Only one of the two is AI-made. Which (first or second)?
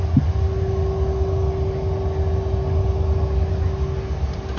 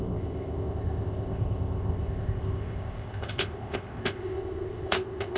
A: second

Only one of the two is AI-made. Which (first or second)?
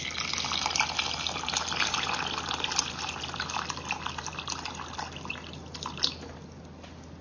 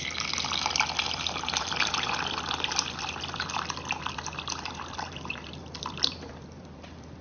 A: second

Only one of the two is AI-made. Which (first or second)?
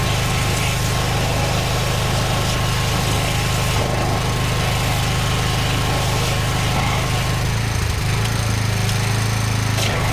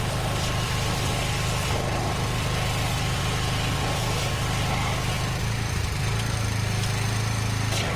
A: second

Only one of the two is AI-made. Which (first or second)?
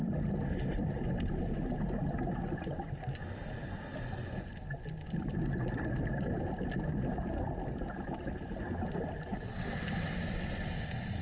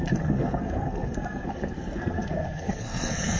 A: second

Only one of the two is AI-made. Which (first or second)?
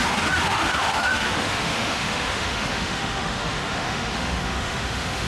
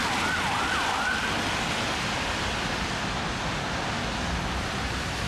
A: first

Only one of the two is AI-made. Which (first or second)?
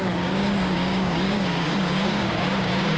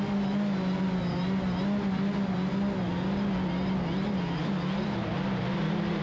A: first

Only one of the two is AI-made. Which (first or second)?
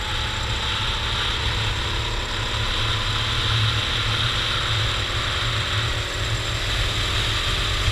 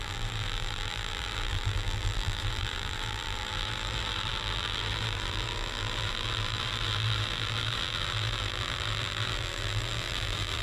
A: second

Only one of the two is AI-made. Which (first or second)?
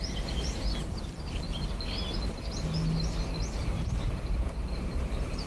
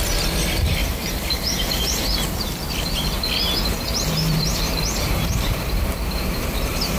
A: second